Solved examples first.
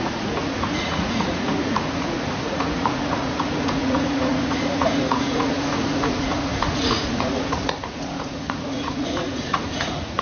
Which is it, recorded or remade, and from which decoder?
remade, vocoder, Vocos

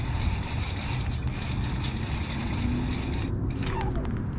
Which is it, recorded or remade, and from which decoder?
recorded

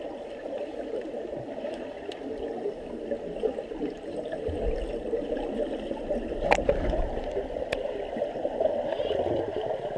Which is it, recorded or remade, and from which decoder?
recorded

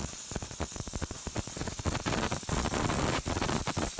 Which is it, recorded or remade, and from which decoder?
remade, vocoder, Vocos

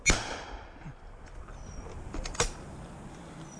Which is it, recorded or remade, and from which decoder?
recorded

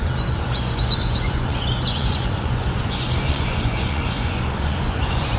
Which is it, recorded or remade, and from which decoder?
remade, vocoder, Vocos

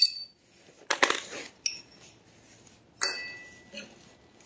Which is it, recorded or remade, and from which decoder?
recorded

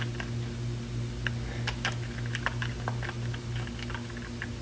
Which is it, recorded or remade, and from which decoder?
recorded